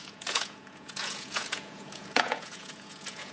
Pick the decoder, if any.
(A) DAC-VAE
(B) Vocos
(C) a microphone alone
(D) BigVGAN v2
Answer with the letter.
B